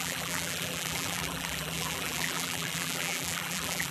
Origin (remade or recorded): remade